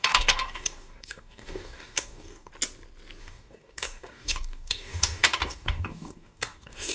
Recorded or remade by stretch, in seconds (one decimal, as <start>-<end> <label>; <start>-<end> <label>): 0.0-2.5 remade; 2.5-3.2 recorded; 3.2-6.9 remade